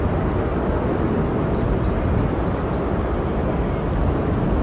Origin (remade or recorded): recorded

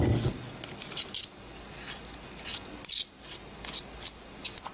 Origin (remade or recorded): recorded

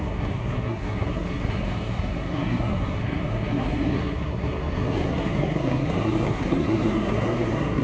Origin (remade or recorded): remade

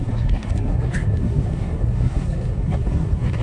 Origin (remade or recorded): remade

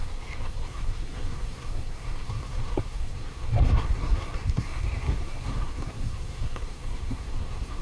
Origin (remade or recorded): remade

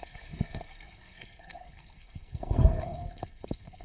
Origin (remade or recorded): remade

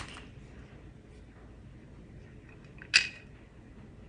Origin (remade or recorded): recorded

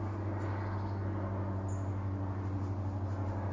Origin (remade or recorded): recorded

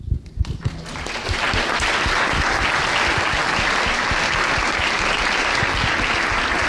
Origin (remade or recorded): recorded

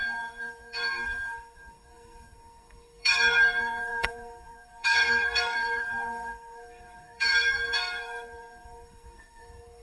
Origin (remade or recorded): remade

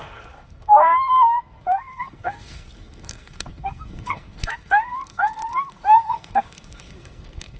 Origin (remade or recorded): remade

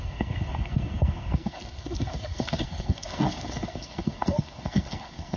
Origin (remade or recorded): remade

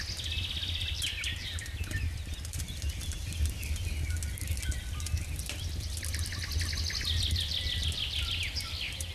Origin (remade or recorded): recorded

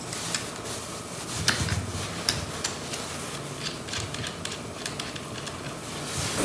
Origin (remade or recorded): recorded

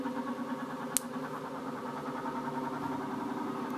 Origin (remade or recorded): recorded